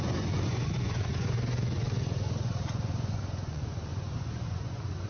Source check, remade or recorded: remade